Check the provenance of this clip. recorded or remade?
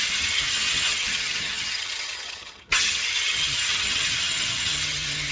remade